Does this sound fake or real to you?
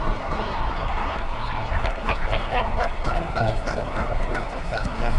fake